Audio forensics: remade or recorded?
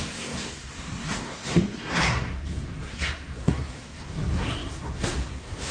remade